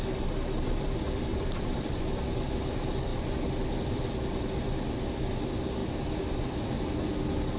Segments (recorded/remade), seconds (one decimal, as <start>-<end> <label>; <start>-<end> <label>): 0.0-1.3 recorded; 1.3-2.0 remade; 2.0-3.1 recorded; 3.1-4.0 remade; 4.0-5.8 recorded; 5.8-7.1 remade; 7.1-7.6 recorded